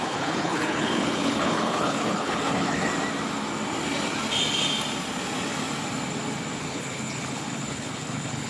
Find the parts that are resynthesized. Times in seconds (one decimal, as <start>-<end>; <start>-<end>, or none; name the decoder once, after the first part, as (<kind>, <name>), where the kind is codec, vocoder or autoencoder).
0.0-2.9 (codec, HILCodec); 6.6-8.5